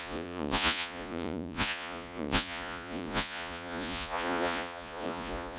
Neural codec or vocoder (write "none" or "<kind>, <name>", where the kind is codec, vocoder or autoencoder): vocoder, Vocos